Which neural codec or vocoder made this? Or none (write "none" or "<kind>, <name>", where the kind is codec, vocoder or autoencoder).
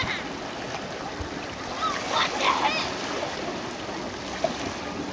none